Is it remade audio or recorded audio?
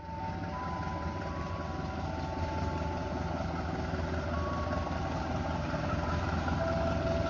recorded